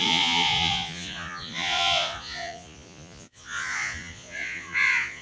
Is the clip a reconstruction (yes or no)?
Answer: yes